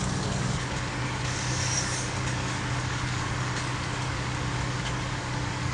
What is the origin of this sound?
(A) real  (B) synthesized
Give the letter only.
B